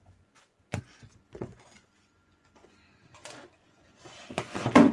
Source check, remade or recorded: remade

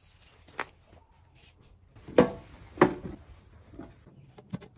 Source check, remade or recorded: recorded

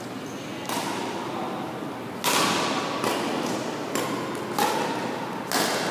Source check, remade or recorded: recorded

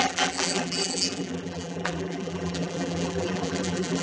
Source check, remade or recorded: remade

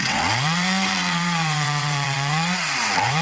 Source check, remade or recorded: remade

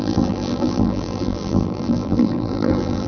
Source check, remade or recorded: remade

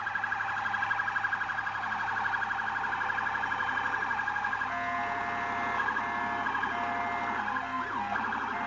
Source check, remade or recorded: recorded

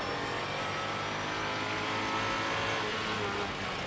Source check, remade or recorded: recorded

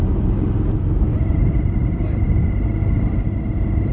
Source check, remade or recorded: recorded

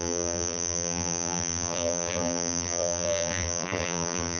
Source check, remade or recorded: remade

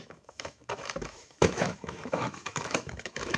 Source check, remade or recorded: remade